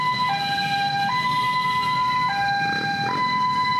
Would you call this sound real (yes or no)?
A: yes